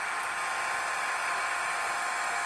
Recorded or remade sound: recorded